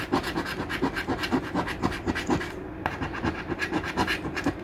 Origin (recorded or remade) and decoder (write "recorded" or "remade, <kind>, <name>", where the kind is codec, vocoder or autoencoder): recorded